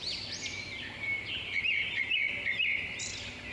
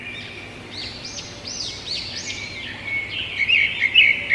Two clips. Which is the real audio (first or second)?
second